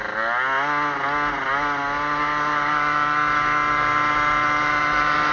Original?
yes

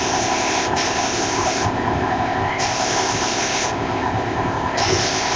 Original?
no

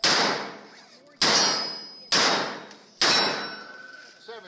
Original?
yes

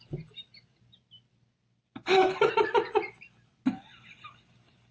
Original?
yes